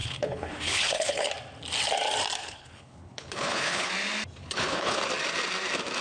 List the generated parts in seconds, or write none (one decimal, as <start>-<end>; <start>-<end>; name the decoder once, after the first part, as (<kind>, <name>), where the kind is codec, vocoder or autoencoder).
0.0-1.3 (codec, HILCodec); 2.4-3.9; 4.4-5.0